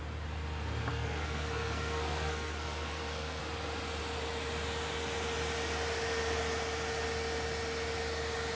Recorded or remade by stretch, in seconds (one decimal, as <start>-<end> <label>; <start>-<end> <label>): 0.0-0.9 recorded; 0.9-3.4 remade; 3.4-8.5 recorded